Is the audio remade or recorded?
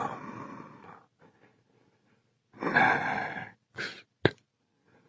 recorded